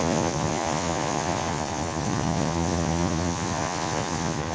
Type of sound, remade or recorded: remade